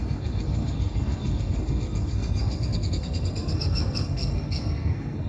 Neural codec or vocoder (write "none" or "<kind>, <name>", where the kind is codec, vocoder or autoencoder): codec, SNAC